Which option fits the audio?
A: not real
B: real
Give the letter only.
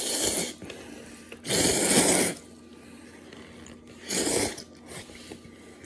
B